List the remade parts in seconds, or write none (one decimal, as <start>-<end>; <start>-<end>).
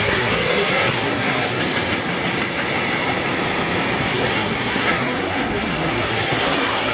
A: 0.0-1.6; 4.0-6.9